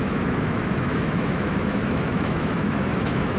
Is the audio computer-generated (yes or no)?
yes